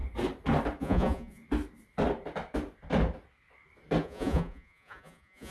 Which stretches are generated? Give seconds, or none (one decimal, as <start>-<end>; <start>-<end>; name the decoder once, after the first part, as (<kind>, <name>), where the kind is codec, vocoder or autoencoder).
0.8-1.4 (vocoder, Vocos); 4.0-5.5